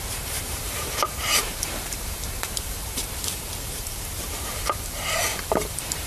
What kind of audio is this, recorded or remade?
remade